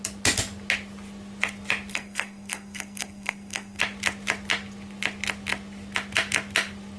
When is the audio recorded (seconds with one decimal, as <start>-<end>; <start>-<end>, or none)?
0.0-1.9; 3.8-7.0